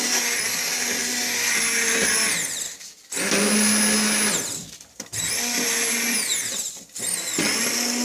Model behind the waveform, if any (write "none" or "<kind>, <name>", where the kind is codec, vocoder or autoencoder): none